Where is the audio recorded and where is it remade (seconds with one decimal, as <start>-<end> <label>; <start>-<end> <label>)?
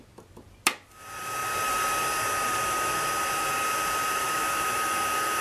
0.0-4.2 recorded; 4.2-5.4 remade